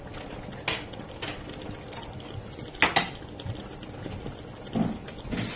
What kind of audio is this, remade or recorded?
recorded